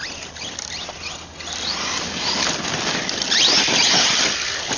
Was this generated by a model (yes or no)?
no